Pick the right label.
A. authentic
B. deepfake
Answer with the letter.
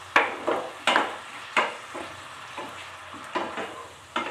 A